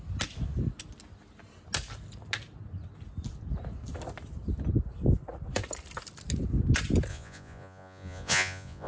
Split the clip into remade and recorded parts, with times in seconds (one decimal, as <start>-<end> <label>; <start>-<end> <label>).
0.0-7.1 recorded; 7.1-8.9 remade